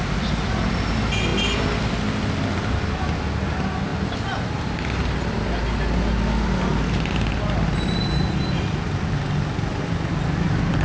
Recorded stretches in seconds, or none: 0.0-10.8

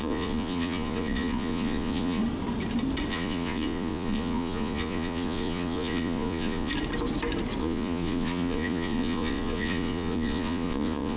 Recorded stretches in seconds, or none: 2.2-3.1; 6.7-7.6

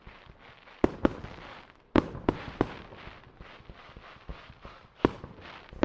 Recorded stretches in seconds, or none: 0.0-1.5; 2.8-4.3; 5.0-5.8

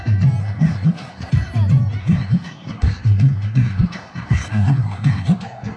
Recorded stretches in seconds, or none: 0.0-0.4; 1.3-2.0

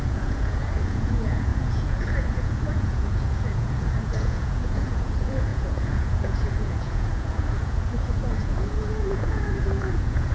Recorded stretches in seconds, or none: none

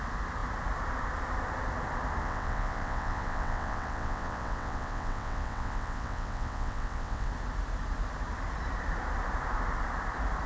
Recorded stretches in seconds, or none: 0.0-2.2; 7.3-10.5

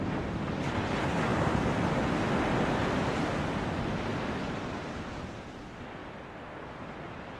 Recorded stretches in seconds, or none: 0.0-7.4